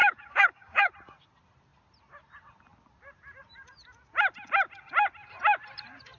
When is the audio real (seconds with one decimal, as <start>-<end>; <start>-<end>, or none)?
0.9-6.2